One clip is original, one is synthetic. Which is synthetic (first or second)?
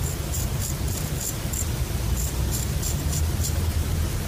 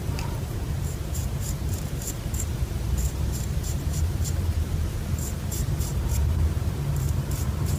second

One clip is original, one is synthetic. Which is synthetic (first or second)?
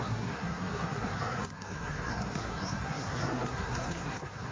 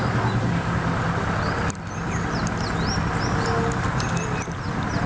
first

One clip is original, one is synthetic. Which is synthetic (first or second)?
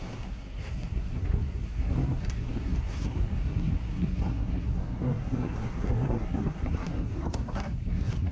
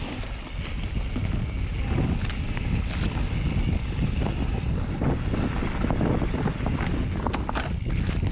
first